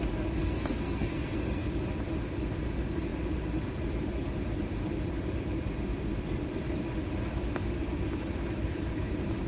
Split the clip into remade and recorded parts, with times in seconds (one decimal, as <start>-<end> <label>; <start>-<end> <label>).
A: 0.0-0.4 recorded; 0.4-1.7 remade; 1.7-9.5 recorded